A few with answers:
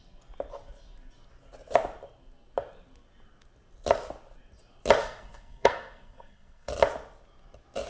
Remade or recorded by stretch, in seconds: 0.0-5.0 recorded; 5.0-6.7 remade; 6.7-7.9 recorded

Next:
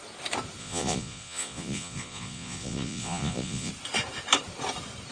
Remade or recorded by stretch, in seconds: 0.0-0.6 recorded; 0.6-3.7 remade; 3.7-5.1 recorded

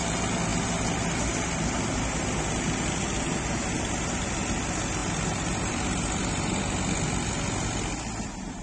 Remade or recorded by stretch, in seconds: 0.0-5.0 recorded; 5.0-6.6 remade; 6.6-8.6 recorded

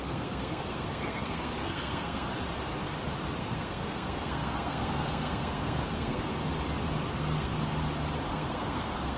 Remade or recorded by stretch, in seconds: 0.0-2.3 remade; 2.3-3.4 recorded; 3.4-6.3 remade; 6.3-7.1 recorded; 7.1-7.5 remade; 7.5-8.3 recorded; 8.3-9.2 remade

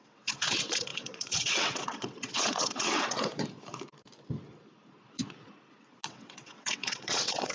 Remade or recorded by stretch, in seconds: 0.0-3.3 remade; 3.3-6.1 recorded; 6.1-7.5 remade

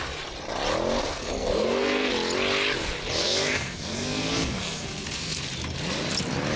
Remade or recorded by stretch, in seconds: 0.0-1.0 recorded; 1.0-2.1 remade; 2.1-3.2 recorded; 3.2-5.4 remade; 5.4-6.6 recorded